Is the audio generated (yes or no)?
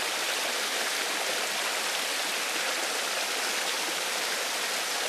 no